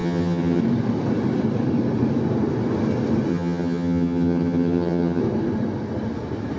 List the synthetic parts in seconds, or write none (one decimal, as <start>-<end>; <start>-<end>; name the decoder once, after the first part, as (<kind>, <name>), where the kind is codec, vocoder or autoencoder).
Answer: 0.0-0.6 (vocoder, HiFi-GAN); 3.3-5.2